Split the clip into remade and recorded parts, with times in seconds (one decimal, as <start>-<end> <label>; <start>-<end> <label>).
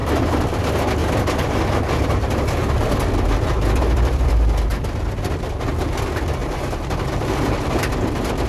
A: 0.0-0.6 remade; 0.6-1.0 recorded; 1.0-4.3 remade; 4.3-4.7 recorded; 4.7-5.7 remade; 5.7-6.4 recorded; 6.4-6.9 remade; 6.9-8.5 recorded